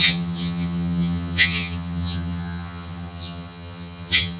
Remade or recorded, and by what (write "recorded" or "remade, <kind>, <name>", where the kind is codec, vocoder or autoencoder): remade, vocoder, HiFi-GAN